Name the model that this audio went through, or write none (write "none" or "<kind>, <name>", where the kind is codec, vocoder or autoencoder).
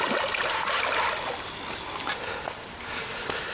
none